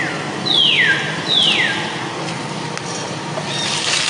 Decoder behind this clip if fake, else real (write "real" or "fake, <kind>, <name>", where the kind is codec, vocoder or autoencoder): real